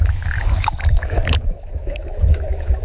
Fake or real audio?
fake